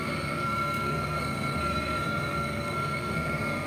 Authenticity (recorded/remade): remade